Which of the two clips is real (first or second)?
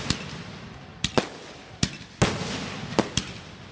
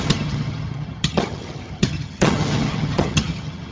first